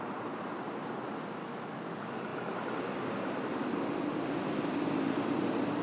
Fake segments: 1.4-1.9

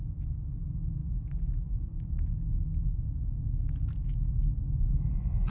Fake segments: none

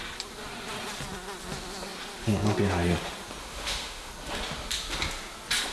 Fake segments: 3.4-4.1

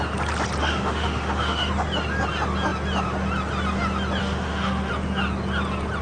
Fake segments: 0.6-1.7; 4.2-4.9

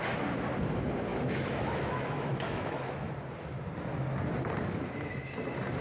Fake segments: 1.1-3.1

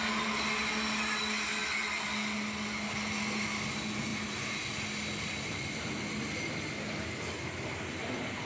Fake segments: none